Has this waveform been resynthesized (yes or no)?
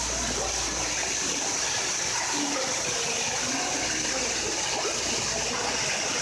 no